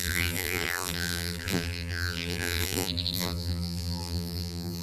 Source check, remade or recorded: remade